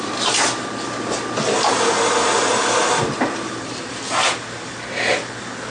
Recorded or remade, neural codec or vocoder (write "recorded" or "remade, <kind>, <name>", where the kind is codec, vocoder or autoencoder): recorded